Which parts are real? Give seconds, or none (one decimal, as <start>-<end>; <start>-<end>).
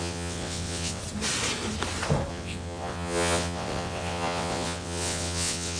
1.0-2.3